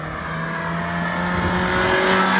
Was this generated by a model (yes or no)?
no